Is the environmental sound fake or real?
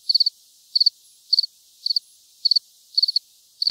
real